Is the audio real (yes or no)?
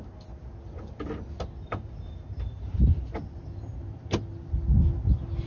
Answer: yes